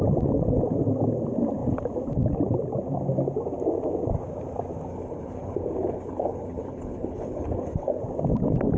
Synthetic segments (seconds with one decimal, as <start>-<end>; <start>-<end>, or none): 4.9-8.0

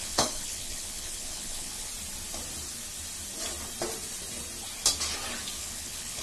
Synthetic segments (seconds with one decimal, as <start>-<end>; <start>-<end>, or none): 0.0-1.9; 5.6-6.2

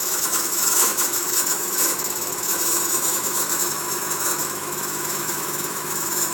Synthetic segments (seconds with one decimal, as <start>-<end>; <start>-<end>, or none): 0.0-6.3